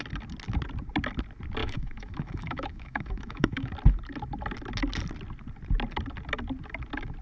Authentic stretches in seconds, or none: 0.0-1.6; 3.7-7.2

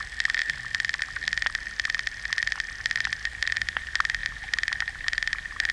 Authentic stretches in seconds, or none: 0.0-5.7